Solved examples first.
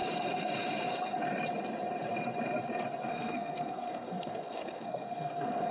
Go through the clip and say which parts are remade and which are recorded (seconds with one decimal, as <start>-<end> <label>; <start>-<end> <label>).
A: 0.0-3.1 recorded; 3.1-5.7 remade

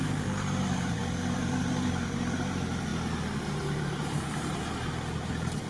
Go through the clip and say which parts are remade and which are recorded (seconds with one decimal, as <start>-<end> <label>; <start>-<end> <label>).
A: 0.0-2.9 remade; 2.9-3.8 recorded; 3.8-5.7 remade

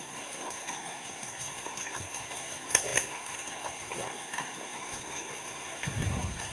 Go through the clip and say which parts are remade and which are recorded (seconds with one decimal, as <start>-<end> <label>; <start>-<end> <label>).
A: 0.0-6.5 remade

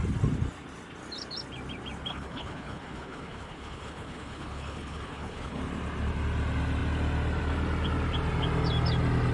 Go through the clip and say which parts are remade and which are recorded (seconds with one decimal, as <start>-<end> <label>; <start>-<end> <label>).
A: 0.0-2.1 recorded; 2.1-5.6 remade; 5.6-9.3 recorded

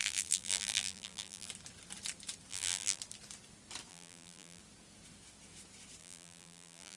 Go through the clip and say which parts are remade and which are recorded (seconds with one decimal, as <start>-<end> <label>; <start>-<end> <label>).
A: 0.0-1.5 remade; 1.5-2.5 recorded; 2.5-3.0 remade; 3.0-3.9 recorded; 3.9-4.6 remade; 4.6-6.0 recorded; 6.0-7.0 remade

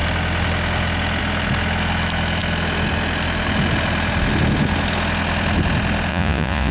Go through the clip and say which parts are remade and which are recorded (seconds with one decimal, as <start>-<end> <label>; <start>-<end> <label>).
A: 0.0-6.1 recorded; 6.1-6.7 remade